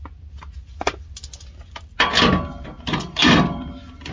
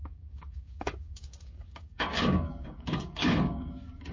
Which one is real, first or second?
first